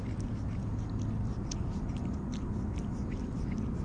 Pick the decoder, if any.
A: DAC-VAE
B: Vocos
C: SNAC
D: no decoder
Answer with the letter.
D